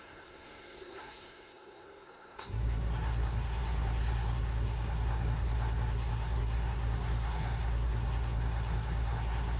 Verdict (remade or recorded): remade